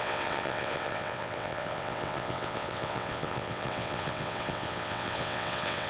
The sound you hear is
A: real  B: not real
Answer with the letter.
B